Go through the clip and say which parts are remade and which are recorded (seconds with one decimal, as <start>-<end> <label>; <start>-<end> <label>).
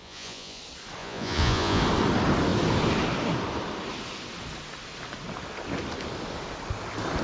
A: 0.0-0.6 remade; 0.6-1.0 recorded; 1.0-1.8 remade; 1.8-7.2 recorded